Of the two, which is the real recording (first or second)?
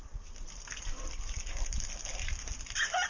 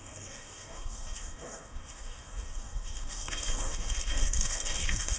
first